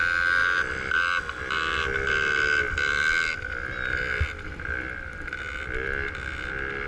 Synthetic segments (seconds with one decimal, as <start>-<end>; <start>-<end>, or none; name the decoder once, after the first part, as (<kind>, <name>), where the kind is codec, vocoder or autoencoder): none